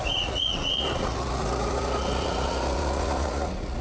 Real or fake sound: fake